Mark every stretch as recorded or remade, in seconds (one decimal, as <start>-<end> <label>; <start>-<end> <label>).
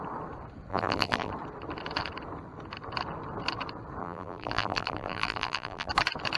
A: 0.0-0.7 recorded; 0.7-1.3 remade; 1.3-4.0 recorded; 4.0-5.9 remade; 5.9-6.4 recorded